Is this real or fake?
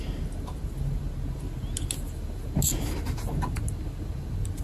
real